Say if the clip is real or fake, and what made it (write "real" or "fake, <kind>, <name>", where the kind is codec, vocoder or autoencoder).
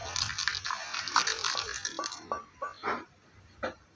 real